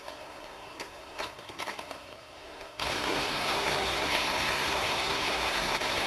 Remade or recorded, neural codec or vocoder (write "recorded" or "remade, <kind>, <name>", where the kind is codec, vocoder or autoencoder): remade, codec, SNAC